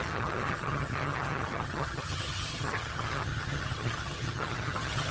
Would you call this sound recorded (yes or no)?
no